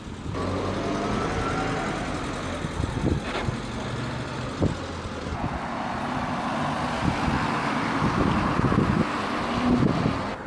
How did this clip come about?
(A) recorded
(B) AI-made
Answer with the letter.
A